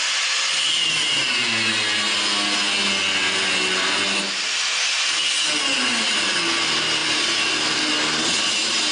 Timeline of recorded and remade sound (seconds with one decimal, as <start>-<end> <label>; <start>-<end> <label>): 0.0-8.9 recorded